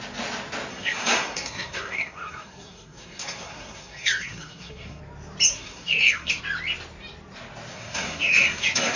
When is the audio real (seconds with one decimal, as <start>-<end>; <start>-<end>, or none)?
0.0-0.7; 5.0-5.5; 6.4-7.7